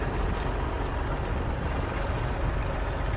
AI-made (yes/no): no